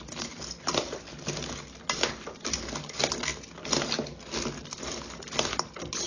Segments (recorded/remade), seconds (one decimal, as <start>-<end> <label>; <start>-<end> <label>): 0.0-6.1 recorded